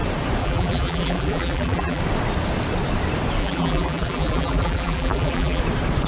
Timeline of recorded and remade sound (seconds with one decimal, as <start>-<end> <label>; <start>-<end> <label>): 0.0-0.4 recorded; 0.4-2.0 remade; 2.0-3.4 recorded; 3.4-5.6 remade; 5.6-6.1 recorded